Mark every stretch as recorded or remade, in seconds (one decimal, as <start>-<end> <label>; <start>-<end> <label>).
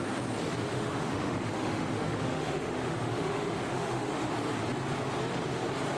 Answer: 0.0-0.7 recorded; 0.7-4.3 remade; 4.3-6.0 recorded